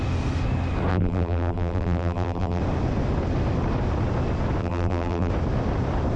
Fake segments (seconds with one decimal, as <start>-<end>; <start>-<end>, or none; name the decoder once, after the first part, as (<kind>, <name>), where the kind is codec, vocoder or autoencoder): 0.9-2.6 (vocoder, BigVGAN v2); 4.6-5.3